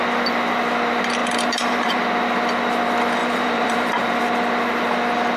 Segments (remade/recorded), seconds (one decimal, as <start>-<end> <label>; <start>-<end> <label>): 0.0-1.2 recorded; 1.2-2.0 remade; 2.0-3.2 recorded; 3.2-4.1 remade; 4.1-5.4 recorded